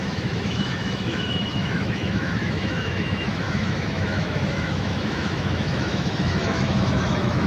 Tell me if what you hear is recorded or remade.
remade